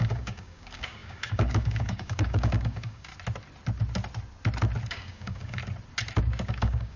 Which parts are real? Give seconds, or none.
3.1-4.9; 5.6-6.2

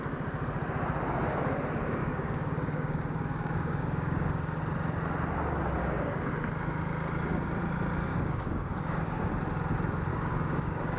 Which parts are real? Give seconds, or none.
0.0-2.0; 4.6-5.8; 6.3-8.1; 9.3-10.1

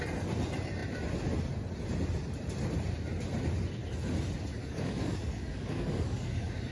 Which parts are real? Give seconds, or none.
0.0-4.6

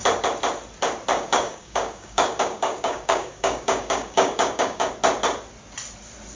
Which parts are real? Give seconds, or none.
0.0-1.1; 4.9-6.4

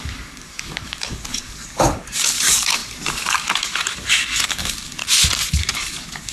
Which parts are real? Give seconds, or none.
5.0-5.5

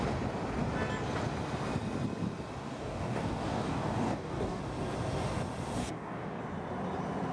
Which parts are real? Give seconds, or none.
0.0-2.6; 4.6-5.8; 6.4-7.3

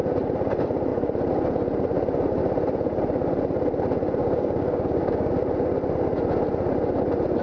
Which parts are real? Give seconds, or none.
0.0-4.2; 5.3-7.4

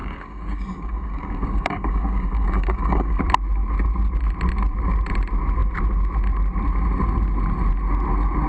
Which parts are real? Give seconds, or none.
3.2-8.5